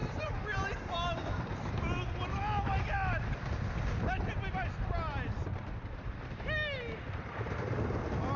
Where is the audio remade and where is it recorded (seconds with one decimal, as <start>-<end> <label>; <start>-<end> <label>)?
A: 0.0-0.9 remade; 0.9-5.5 recorded; 5.5-6.1 remade; 6.1-8.4 recorded